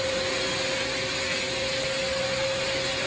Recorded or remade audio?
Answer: recorded